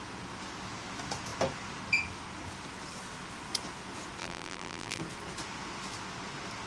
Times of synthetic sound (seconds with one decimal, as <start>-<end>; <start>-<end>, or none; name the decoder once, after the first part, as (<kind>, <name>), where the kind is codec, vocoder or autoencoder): 4.2-5.0 (vocoder, BigVGAN v2)